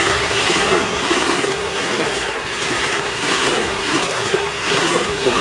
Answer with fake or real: fake